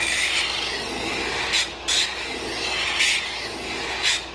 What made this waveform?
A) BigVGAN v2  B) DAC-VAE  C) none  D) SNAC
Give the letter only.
C